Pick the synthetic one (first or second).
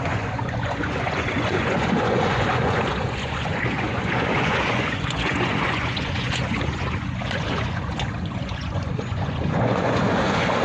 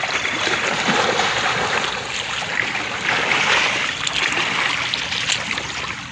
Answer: first